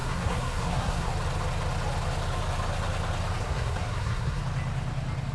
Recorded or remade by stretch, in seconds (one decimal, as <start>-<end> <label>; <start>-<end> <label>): 0.0-1.1 remade; 1.1-3.4 recorded; 3.4-4.4 remade; 4.4-5.3 recorded